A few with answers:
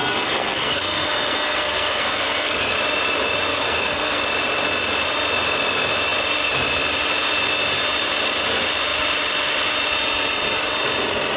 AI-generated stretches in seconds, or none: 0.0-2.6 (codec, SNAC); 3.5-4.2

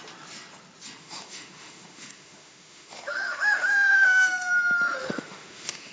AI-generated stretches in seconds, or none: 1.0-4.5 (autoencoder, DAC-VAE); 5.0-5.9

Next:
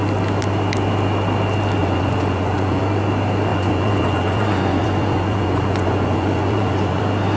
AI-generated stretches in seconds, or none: 1.8-2.8 (vocoder, Vocos); 3.5-7.0

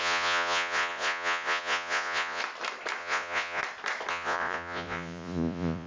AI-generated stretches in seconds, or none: 0.0-2.4 (vocoder, Vocos); 3.0-3.6; 4.1-5.9

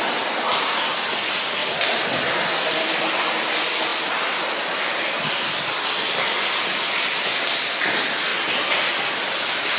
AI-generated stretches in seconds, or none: 1.6-3.4 (vocoder, BigVGAN v2); 3.9-6.6; 8.3-8.9